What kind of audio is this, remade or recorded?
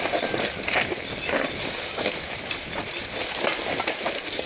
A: recorded